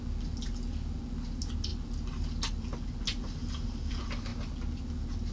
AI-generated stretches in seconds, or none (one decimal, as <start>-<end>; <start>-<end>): none